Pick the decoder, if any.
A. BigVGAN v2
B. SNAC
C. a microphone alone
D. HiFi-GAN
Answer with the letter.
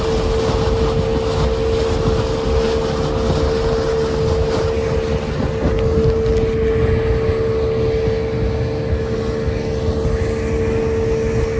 C